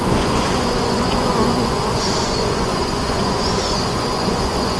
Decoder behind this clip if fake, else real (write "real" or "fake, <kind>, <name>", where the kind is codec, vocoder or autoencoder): fake, vocoder, Vocos